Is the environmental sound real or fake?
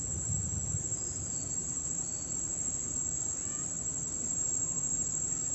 real